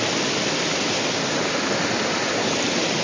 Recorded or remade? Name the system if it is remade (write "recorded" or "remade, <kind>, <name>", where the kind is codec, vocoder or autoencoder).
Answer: recorded